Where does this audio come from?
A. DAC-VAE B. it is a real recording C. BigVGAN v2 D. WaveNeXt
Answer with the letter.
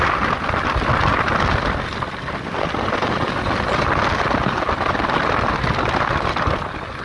B